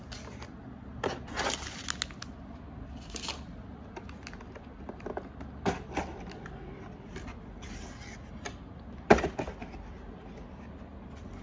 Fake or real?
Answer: real